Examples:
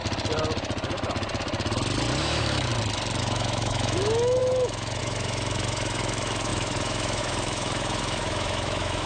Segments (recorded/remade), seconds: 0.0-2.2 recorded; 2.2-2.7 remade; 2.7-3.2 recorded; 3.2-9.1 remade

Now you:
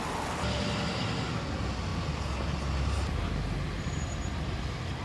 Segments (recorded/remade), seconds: 0.0-5.0 recorded

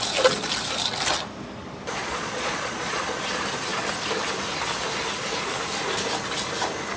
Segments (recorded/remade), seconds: 0.0-2.0 recorded; 2.0-3.0 remade; 3.0-7.0 recorded

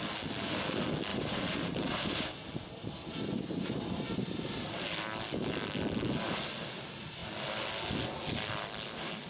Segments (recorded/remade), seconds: 0.0-1.1 recorded; 1.1-2.3 remade; 2.3-9.3 recorded

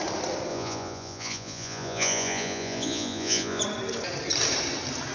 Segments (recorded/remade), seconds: 0.0-0.5 recorded; 0.5-3.6 remade; 3.6-5.1 recorded

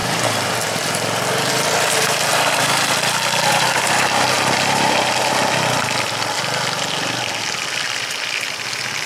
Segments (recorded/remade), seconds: 0.0-9.1 recorded

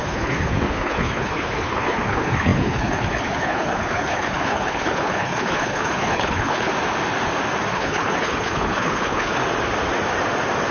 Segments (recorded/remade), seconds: 0.0-6.7 remade; 6.7-7.7 recorded; 7.7-9.4 remade; 9.4-10.7 recorded